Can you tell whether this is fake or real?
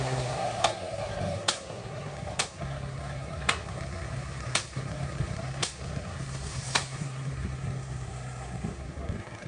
fake